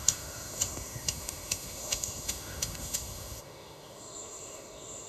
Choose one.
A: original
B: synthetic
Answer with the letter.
B